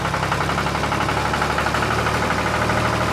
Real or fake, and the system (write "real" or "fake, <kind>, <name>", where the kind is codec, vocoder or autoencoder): real